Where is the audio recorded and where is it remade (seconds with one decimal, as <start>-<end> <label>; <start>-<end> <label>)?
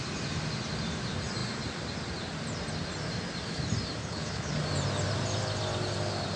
0.0-4.0 recorded; 4.0-4.6 remade; 4.6-6.4 recorded